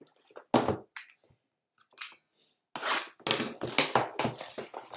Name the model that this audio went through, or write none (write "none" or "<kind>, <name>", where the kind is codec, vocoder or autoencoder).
none